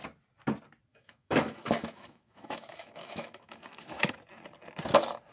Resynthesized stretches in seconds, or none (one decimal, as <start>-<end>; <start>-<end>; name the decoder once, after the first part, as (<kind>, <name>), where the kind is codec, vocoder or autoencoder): 0.9-4.1 (autoencoder, DAC-VAE)